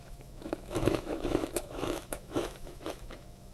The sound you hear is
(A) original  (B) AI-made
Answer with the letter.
B